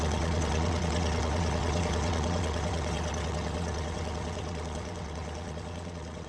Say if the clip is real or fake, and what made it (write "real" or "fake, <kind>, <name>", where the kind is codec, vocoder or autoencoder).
fake, vocoder, WaveNeXt